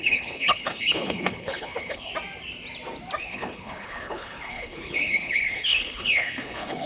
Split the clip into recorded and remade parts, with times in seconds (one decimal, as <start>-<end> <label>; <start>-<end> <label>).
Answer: 0.0-2.1 remade; 2.1-3.2 recorded; 3.2-6.9 remade